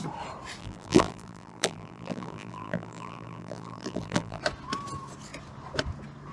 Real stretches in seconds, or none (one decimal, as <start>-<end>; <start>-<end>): 0.0-0.6; 4.4-6.3